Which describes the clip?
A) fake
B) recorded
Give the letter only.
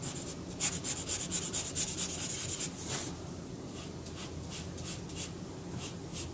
B